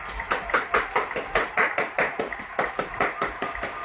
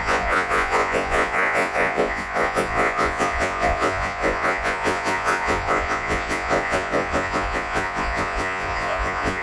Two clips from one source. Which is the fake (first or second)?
second